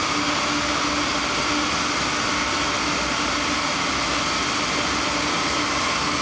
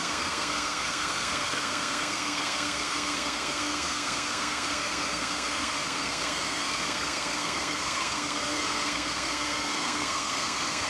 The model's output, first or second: second